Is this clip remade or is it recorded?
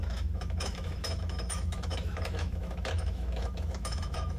remade